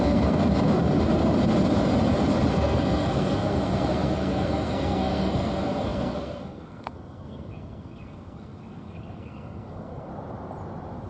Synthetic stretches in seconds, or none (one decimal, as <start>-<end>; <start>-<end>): 0.0-0.4; 2.5-10.1